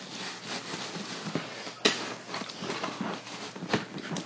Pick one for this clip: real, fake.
real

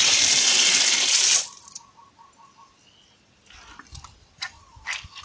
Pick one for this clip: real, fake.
real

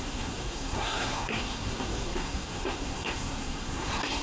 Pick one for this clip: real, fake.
fake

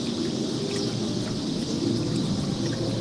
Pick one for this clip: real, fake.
real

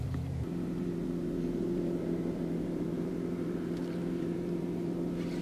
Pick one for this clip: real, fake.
fake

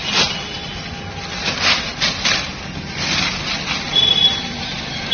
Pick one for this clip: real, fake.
real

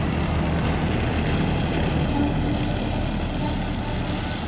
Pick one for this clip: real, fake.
real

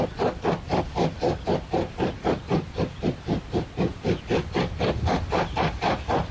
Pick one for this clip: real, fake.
real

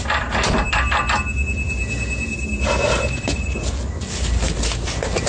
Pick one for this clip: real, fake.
real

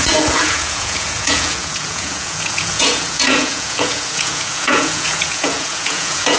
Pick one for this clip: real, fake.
fake